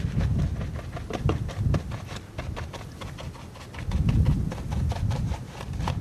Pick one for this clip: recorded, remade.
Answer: recorded